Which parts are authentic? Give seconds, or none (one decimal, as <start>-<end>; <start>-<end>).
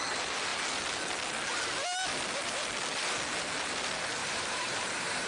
0.0-4.2